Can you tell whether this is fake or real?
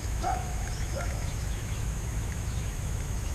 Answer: fake